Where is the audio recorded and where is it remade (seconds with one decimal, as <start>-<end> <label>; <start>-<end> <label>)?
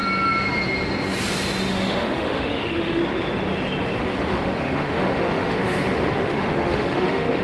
0.0-1.7 recorded; 1.7-3.0 remade; 3.0-4.0 recorded; 4.0-7.4 remade